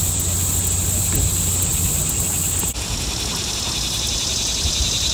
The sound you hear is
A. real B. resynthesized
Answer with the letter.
A